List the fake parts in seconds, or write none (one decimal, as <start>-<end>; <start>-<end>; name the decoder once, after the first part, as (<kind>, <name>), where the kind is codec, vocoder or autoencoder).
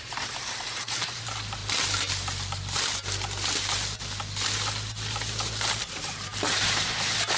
0.0-1.6 (vocoder, BigVGAN v2); 5.8-7.4